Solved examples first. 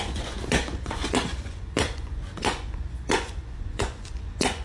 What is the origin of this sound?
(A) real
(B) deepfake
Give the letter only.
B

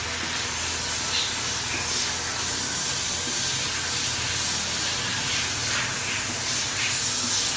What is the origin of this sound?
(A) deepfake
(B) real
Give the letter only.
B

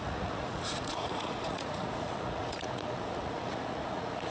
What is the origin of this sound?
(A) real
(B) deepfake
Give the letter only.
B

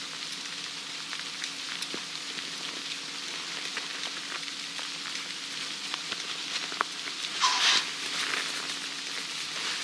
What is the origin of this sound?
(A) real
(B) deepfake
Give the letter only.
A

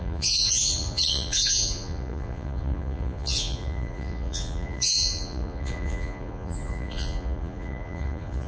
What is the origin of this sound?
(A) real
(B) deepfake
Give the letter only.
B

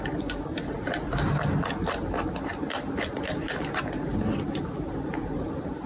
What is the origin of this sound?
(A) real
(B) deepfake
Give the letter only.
A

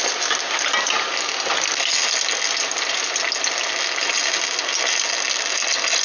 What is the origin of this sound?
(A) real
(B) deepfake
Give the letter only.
A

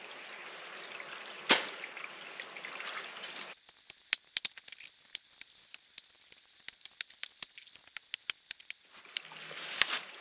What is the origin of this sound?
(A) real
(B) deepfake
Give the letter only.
A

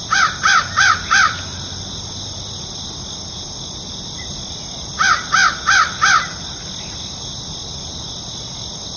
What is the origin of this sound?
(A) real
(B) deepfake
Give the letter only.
A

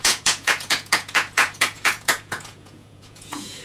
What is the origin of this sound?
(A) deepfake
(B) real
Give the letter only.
A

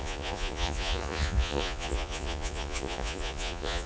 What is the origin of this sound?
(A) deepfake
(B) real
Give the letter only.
A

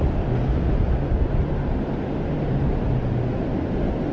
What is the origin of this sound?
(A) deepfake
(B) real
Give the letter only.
B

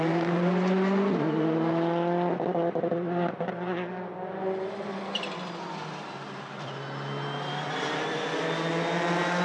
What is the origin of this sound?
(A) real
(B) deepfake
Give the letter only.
A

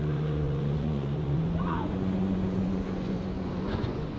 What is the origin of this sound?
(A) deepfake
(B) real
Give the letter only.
A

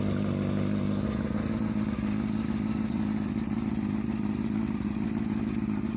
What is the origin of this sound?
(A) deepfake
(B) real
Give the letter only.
B